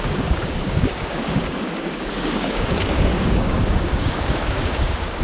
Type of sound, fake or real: fake